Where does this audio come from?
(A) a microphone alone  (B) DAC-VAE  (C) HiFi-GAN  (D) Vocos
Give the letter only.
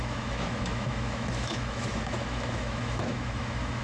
B